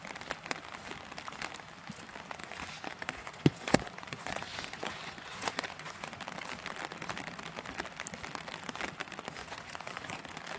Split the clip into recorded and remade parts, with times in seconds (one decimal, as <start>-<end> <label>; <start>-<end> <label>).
0.0-2.4 recorded; 2.4-6.2 remade; 6.2-9.4 recorded; 9.4-10.2 remade; 10.2-10.6 recorded